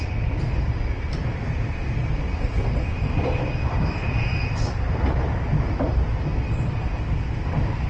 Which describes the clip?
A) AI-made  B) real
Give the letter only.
A